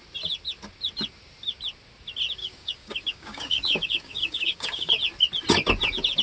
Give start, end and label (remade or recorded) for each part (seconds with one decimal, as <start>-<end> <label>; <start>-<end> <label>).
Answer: 0.0-2.4 recorded; 2.4-4.9 remade; 4.9-6.2 recorded